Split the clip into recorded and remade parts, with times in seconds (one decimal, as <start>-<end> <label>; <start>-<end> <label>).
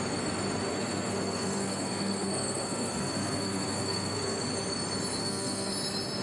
0.0-0.7 recorded; 0.7-4.4 remade; 4.4-5.2 recorded; 5.2-5.7 remade; 5.7-6.2 recorded